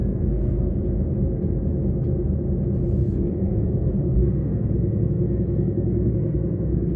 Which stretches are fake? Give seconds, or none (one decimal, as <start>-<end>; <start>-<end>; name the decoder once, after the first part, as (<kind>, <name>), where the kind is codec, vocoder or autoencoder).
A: 0.0-0.7 (codec, SNAC); 3.0-7.0